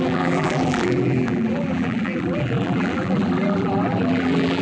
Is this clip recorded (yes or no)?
no